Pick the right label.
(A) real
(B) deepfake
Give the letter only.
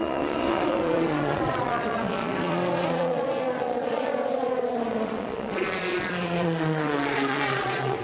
B